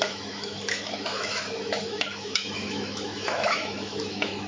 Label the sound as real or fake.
fake